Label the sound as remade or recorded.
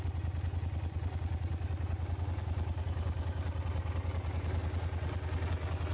recorded